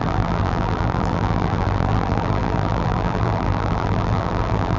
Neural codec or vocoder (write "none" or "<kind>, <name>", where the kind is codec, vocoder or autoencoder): vocoder, BigVGAN v2